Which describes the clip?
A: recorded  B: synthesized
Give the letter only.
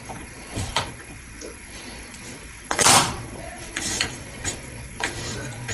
B